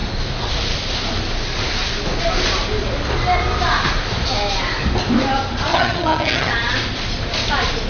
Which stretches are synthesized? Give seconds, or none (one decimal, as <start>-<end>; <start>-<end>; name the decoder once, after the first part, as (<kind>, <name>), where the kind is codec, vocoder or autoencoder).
5.7-6.5 (vocoder, HiFi-GAN)